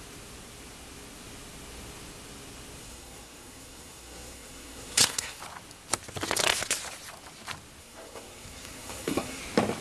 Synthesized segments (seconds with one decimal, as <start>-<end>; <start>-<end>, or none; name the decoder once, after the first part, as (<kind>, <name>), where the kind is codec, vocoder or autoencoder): 2.8-5.4 (codec, SNAC); 7.8-9.4